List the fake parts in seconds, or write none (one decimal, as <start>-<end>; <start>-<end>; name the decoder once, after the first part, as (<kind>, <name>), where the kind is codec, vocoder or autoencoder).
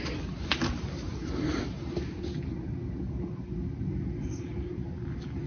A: none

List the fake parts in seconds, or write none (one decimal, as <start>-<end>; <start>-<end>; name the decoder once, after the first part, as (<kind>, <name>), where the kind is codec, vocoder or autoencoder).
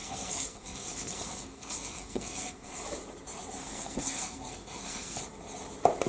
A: 0.0-2.8 (codec, SNAC); 3.6-5.2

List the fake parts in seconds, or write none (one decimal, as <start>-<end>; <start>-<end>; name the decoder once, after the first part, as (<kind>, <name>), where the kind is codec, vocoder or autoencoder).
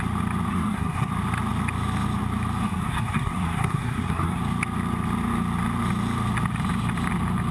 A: 0.5-1.1 (codec, SNAC); 2.6-4.4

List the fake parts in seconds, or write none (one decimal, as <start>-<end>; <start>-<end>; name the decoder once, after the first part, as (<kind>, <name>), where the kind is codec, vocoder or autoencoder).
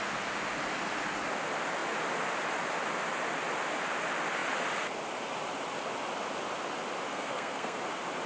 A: 7.1-7.8 (codec, SNAC)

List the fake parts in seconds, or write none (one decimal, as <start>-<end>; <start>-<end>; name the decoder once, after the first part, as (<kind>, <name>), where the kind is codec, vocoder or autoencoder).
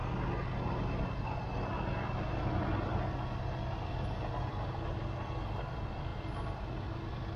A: none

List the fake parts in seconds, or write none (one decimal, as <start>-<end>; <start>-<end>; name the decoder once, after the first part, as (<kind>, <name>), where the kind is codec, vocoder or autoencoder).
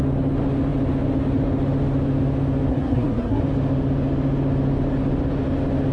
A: 2.7-3.4 (codec, SNAC)